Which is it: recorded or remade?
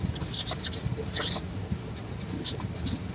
recorded